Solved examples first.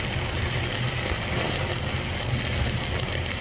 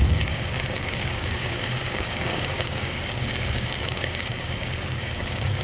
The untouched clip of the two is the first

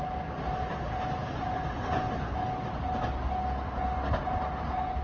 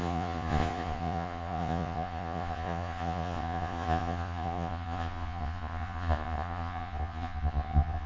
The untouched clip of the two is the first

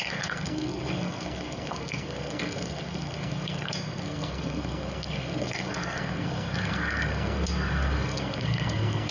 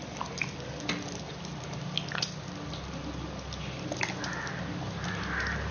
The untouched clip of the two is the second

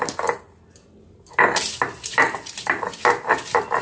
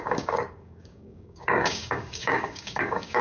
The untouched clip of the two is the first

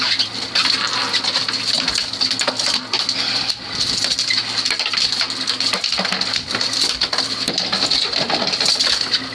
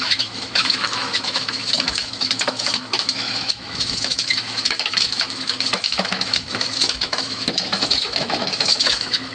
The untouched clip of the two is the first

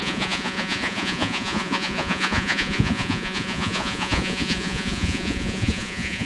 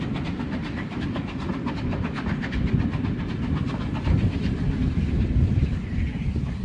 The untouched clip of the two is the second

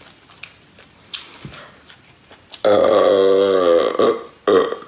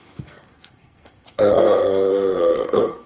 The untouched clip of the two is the first